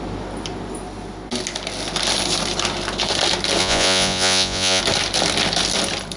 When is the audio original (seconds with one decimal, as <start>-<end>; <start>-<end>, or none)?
0.0-3.6; 4.8-6.2